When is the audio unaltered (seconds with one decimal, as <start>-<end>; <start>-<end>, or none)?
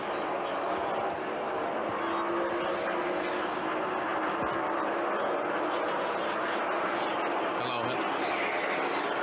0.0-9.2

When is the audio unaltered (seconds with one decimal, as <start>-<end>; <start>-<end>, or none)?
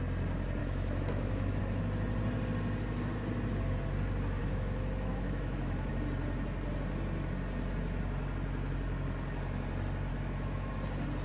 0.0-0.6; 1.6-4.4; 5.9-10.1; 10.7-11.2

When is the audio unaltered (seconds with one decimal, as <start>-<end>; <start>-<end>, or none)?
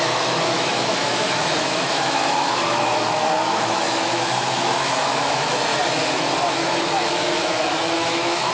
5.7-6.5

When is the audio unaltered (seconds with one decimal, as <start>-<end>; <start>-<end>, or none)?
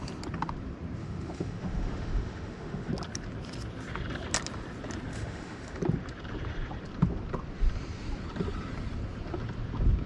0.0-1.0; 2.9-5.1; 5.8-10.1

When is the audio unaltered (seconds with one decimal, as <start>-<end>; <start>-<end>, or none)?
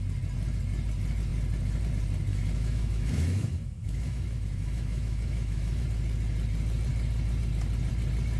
0.0-2.3; 5.8-8.4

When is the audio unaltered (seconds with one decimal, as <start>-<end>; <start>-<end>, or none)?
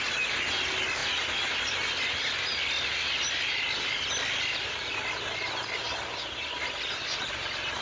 0.0-7.8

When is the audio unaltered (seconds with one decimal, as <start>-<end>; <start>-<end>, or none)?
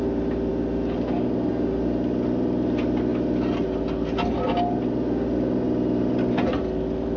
0.0-7.2